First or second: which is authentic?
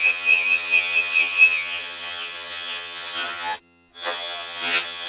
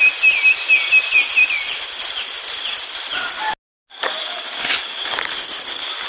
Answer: second